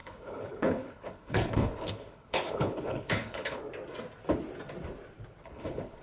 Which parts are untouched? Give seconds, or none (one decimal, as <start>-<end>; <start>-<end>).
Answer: 3.6-5.4